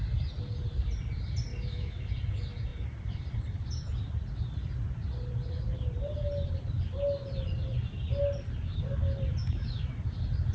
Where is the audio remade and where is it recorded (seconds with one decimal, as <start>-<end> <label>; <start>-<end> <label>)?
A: 0.0-1.5 recorded; 1.5-2.1 remade; 2.1-9.4 recorded; 9.4-9.9 remade; 9.9-10.5 recorded